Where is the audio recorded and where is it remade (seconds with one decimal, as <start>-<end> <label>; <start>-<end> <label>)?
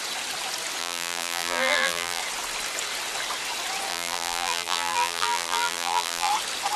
0.0-0.8 recorded; 0.8-2.2 remade; 2.2-3.9 recorded; 3.9-6.3 remade; 6.3-6.8 recorded